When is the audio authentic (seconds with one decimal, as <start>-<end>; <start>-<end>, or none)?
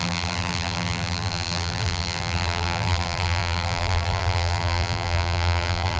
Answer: none